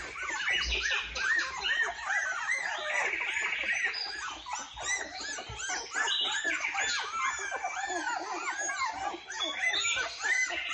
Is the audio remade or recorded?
recorded